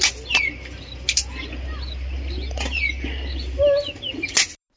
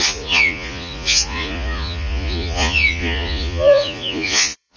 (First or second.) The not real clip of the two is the second